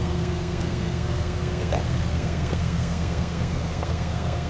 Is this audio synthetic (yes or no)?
yes